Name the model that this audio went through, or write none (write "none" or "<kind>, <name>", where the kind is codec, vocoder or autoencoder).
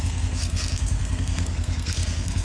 codec, SNAC